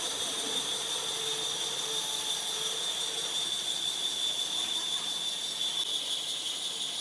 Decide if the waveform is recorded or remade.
recorded